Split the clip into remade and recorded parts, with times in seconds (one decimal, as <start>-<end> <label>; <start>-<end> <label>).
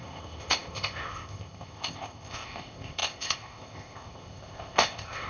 0.0-5.3 remade